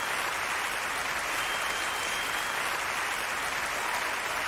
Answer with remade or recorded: recorded